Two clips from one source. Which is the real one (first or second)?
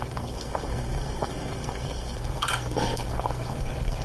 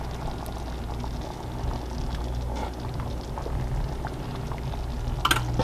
second